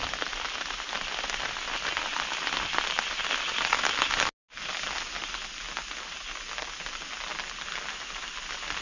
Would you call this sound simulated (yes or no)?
no